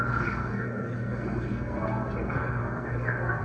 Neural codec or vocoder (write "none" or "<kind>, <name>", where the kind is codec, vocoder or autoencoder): codec, SNAC